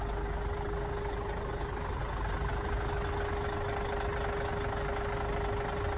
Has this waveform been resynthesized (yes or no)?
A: no